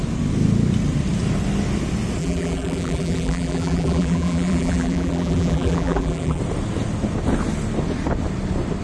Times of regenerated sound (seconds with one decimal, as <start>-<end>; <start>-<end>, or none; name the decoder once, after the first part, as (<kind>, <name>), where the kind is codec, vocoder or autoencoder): 2.2-6.4 (vocoder, BigVGAN v2)

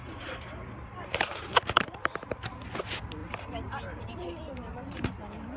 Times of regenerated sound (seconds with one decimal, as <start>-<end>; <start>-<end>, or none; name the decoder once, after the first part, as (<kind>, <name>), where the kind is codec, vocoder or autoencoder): 0.0-2.1 (vocoder, BigVGAN v2); 3.2-5.1

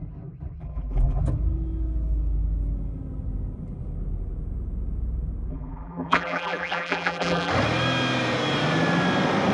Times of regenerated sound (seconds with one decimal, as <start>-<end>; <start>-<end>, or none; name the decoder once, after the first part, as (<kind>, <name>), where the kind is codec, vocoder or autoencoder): 0.6-1.2 (vocoder, BigVGAN v2); 5.5-7.5

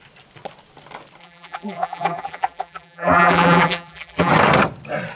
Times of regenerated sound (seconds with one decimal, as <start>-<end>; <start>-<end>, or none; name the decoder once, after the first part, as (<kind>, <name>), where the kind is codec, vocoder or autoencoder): 1.2-4.3 (vocoder, BigVGAN v2)

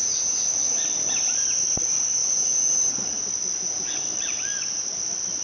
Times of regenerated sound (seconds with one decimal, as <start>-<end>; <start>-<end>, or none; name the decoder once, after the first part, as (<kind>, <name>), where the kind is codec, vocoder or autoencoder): 0.0-0.6 (vocoder, BigVGAN v2); 2.2-2.9

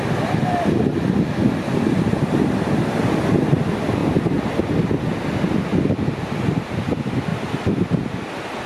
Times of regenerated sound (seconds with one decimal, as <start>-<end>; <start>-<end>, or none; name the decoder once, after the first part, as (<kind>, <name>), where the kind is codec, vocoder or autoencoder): 0.0-1.4 (vocoder, BigVGAN v2); 3.6-4.0; 5.6-8.7

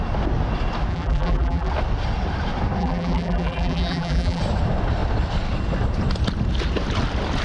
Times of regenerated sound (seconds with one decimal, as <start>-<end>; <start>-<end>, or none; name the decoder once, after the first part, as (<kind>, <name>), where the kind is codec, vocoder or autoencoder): 0.9-1.7 (vocoder, BigVGAN v2); 2.8-4.4

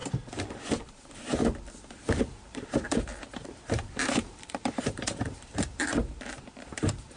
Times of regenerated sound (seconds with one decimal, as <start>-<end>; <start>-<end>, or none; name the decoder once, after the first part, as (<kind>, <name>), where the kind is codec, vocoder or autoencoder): 0.8-1.4 (vocoder, BigVGAN v2); 2.0-7.2